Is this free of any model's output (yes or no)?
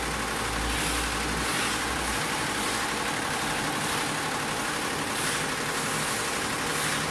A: yes